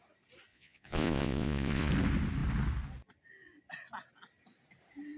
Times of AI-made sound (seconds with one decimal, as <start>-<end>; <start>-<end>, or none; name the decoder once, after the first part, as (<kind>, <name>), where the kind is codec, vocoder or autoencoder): 0.5-1.9 (vocoder, Vocos)